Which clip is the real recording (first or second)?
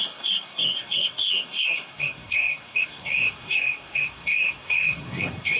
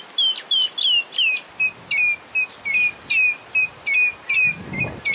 second